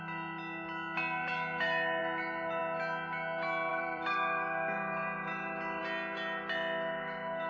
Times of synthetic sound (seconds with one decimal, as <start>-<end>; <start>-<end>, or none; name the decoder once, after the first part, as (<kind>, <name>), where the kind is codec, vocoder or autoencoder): 3.7-5.8 (vocoder, BigVGAN v2)

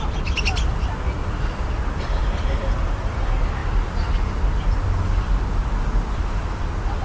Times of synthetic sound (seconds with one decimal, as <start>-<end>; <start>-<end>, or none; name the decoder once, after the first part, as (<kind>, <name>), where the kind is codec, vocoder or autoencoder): 2.2-2.9 (vocoder, BigVGAN v2)

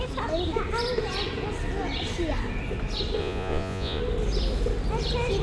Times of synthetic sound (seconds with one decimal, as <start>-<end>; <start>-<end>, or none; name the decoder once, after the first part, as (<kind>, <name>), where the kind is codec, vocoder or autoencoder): 3.2-4.0 (vocoder, Vocos)

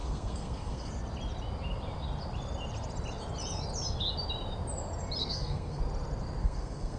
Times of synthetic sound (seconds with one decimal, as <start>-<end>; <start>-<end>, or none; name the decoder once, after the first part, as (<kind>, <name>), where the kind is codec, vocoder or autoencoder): 0.0-0.9 (codec, SNAC); 5.2-5.8; 6.4-7.0

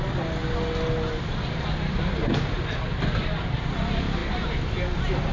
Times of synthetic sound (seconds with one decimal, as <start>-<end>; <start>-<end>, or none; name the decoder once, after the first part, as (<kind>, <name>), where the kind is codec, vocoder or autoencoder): none